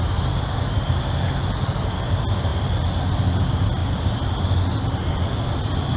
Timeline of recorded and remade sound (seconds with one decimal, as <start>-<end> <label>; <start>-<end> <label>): 0.0-6.0 recorded